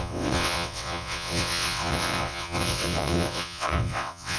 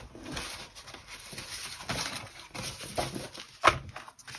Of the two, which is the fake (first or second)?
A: first